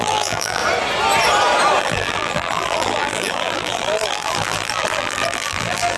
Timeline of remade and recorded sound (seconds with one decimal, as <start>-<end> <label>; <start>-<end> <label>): 0.0-0.6 remade; 0.6-1.8 recorded; 1.8-6.0 remade